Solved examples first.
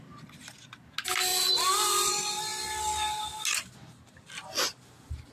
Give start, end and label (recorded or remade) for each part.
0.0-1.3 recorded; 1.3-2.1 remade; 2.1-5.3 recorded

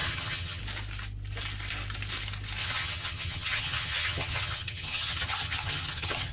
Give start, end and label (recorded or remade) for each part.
0.0-0.6 remade; 0.6-2.6 recorded; 2.6-6.3 remade

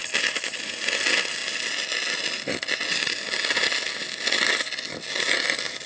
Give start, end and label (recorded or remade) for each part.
0.0-5.9 recorded